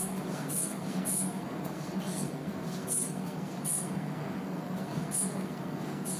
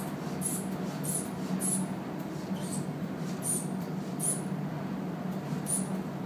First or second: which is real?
second